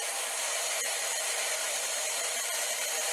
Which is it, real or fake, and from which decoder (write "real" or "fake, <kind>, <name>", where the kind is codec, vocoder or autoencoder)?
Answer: fake, vocoder, BigVGAN v2